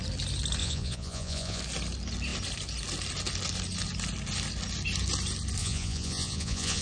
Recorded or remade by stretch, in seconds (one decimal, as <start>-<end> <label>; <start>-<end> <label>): 0.0-0.6 recorded; 0.6-1.6 remade; 1.6-5.6 recorded; 5.6-6.8 remade